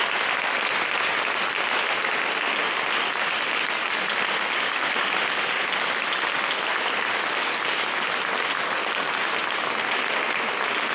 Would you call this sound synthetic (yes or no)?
no